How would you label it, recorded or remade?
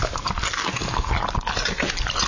recorded